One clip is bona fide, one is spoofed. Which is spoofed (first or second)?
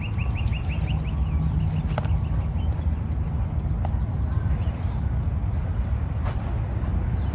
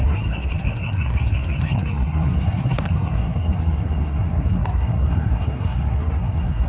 second